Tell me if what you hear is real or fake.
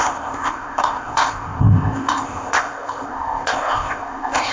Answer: fake